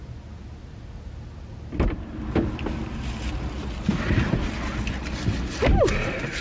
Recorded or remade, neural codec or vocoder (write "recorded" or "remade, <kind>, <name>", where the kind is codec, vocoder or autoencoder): recorded